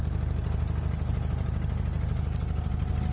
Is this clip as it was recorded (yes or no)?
yes